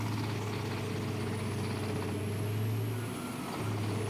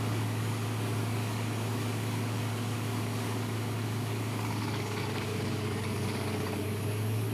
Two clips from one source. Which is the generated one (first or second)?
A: second